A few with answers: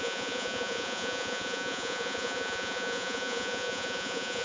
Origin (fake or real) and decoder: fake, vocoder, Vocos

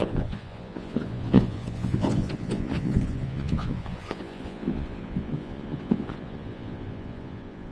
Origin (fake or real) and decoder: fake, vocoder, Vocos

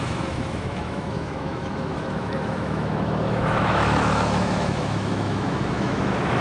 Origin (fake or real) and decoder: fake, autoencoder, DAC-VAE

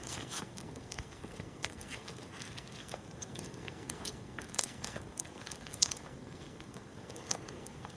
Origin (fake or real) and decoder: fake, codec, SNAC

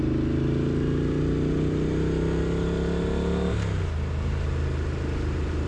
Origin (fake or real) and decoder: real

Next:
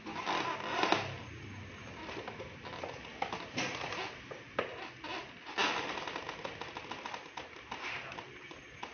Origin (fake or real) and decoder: real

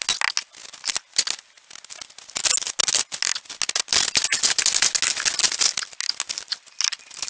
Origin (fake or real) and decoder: real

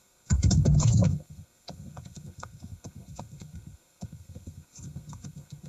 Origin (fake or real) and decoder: fake, codec, SNAC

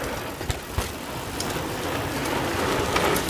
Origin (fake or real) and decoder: real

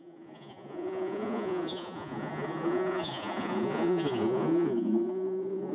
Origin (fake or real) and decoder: fake, vocoder, Vocos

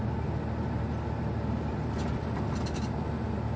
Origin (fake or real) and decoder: real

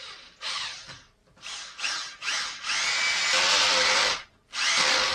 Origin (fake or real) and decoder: real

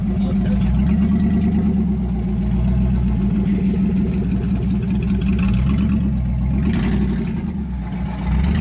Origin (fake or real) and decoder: real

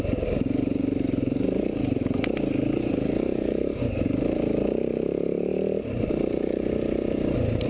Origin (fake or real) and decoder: real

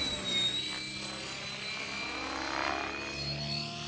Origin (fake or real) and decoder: real